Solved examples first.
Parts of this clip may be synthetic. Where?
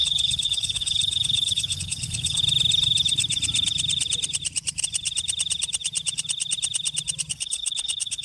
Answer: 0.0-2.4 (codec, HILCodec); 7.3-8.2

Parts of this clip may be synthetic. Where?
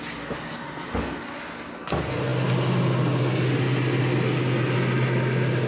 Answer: none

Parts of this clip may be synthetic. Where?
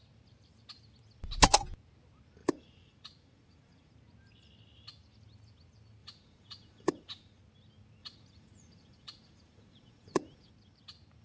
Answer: 2.4-3.9 (vocoder, Vocos); 6.0-7.4; 8.0-10.5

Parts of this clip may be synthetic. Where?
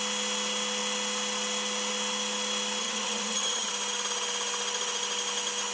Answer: 2.8-3.7 (vocoder, HiFi-GAN)